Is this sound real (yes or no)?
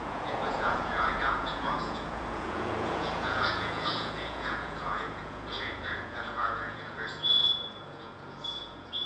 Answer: no